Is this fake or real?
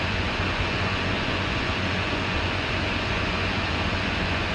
fake